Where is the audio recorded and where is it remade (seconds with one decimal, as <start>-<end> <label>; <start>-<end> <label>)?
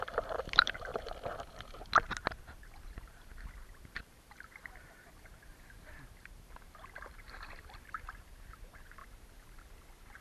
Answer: 0.0-0.9 remade; 0.9-2.4 recorded; 2.4-5.5 remade; 5.5-6.1 recorded; 6.1-9.0 remade; 9.0-10.2 recorded